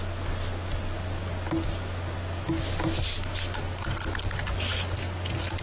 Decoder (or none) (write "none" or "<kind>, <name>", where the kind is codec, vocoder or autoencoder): none